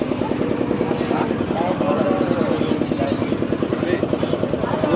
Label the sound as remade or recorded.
recorded